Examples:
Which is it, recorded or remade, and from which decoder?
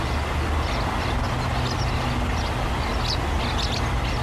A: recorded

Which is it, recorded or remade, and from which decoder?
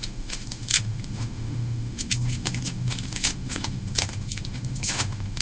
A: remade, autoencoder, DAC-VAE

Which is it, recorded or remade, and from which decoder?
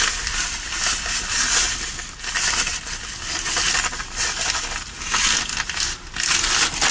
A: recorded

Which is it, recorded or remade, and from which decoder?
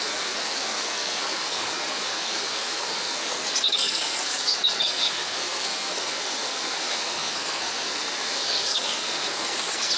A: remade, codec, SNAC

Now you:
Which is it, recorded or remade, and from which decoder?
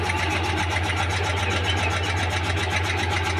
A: recorded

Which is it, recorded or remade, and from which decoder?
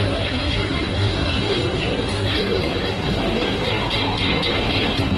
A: remade, codec, SNAC